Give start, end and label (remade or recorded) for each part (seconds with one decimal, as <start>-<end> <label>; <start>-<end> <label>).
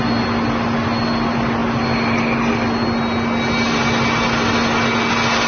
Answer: 0.0-5.5 recorded